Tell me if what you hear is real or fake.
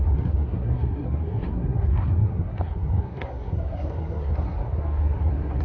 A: fake